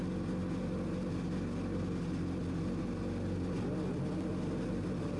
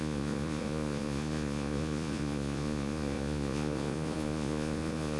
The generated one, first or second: second